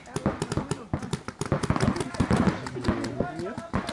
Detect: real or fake real